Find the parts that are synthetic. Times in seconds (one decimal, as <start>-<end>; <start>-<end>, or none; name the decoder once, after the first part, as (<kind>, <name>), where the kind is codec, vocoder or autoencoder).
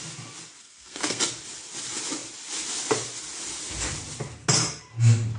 0.6-1.2 (codec, SNAC)